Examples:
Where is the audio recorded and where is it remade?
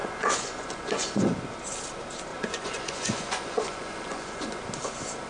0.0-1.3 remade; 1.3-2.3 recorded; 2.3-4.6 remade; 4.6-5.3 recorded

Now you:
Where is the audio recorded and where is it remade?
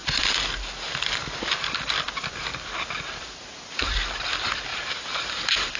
0.0-4.7 recorded; 4.7-5.8 remade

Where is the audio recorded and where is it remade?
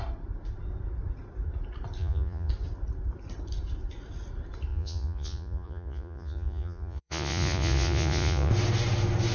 0.0-2.0 recorded; 2.0-2.5 remade; 2.5-4.7 recorded; 4.7-8.5 remade; 8.5-9.3 recorded